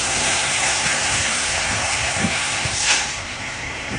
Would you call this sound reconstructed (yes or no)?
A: yes